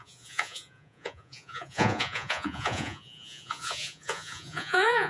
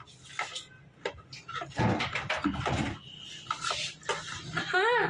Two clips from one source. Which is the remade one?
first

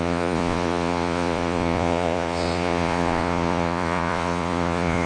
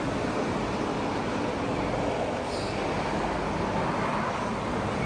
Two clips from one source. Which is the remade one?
first